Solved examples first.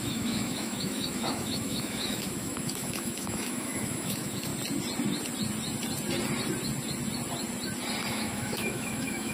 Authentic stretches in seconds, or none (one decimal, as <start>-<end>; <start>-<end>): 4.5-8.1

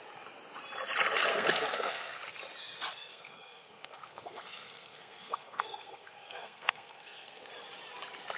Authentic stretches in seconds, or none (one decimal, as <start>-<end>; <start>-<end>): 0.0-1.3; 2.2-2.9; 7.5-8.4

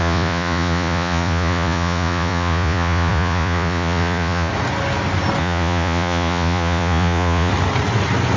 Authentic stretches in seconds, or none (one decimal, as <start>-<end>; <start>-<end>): 4.5-5.4; 7.5-8.4

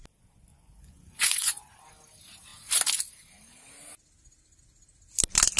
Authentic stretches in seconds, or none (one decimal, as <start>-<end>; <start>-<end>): 0.0-0.5; 1.8-5.6